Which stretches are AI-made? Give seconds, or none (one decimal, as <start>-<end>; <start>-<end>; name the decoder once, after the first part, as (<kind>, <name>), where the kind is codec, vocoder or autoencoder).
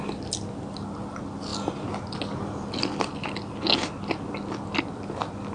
none